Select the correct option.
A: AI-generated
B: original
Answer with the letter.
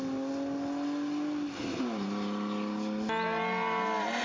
B